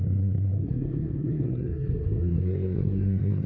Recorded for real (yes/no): no